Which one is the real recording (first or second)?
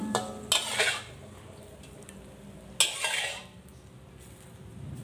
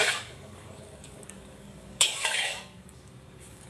first